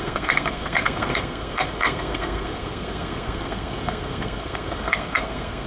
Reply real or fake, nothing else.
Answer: fake